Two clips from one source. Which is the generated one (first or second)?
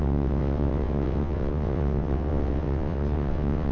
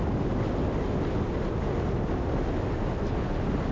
first